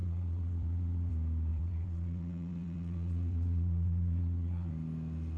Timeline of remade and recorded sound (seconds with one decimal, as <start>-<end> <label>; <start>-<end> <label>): 0.0-1.1 remade; 1.1-1.5 recorded; 1.5-4.7 remade; 4.7-5.4 recorded